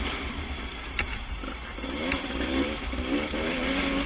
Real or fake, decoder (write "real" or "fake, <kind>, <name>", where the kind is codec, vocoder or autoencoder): fake, vocoder, BigVGAN v2